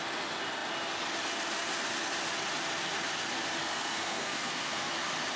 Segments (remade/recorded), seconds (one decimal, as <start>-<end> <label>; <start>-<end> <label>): 0.0-3.6 recorded; 3.6-4.9 remade; 4.9-5.4 recorded